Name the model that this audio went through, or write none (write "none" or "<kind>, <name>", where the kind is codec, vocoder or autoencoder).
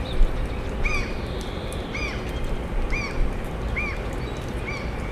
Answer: none